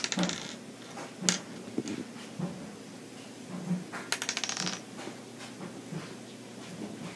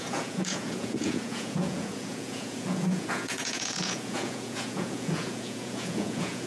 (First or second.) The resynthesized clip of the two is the second